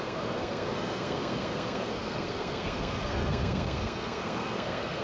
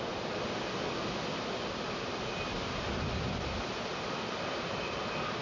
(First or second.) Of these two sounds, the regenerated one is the first